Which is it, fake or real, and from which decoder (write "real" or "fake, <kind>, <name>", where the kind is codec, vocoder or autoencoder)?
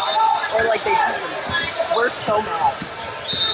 real